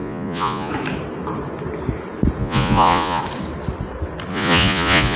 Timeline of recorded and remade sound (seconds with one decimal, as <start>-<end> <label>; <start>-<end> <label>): 0.0-0.7 remade; 0.7-2.4 recorded; 2.4-3.2 remade; 3.2-4.3 recorded; 4.3-5.2 remade